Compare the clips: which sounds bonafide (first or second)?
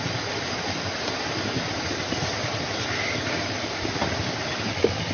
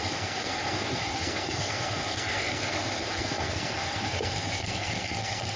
first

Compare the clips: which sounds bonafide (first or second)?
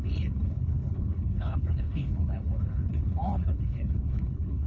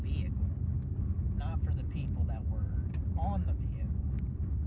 second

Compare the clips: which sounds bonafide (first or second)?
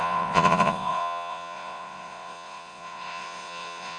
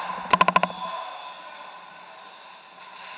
second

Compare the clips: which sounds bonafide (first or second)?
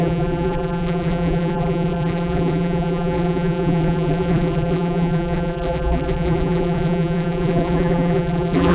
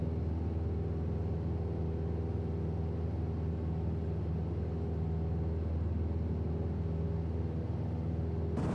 second